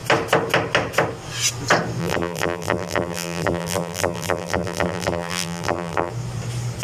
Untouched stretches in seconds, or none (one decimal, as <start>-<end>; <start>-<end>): 0.0-2.0; 6.1-6.8